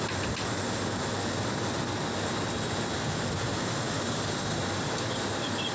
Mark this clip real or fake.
real